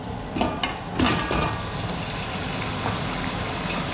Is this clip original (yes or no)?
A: yes